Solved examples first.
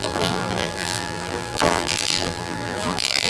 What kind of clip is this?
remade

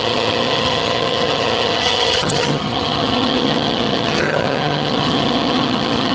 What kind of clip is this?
remade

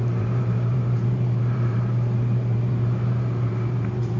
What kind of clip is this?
remade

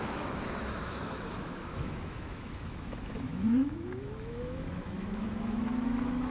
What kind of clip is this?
remade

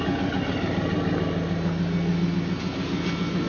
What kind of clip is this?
recorded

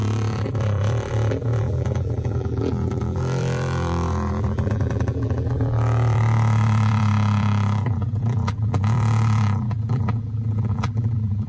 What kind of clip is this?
remade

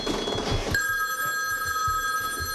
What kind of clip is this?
recorded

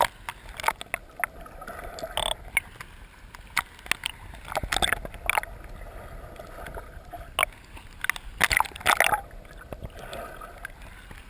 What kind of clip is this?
recorded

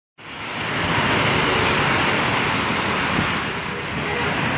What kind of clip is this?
recorded